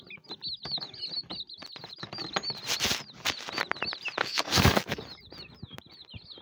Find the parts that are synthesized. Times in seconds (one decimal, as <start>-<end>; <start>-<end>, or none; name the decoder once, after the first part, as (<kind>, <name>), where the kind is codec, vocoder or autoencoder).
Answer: 4.2-5.0 (codec, SNAC)